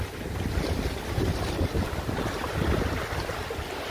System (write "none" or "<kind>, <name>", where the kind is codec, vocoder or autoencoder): none